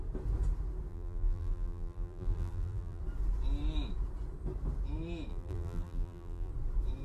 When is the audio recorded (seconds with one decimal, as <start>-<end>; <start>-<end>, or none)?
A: 0.0-0.9; 3.0-5.3; 6.5-7.0